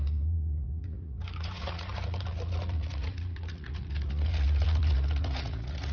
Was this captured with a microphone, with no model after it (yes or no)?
no